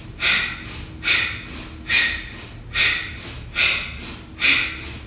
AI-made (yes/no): no